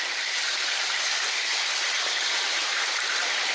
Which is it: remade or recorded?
recorded